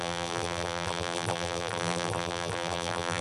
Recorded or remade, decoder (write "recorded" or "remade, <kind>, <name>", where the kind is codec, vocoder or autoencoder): remade, vocoder, BigVGAN v2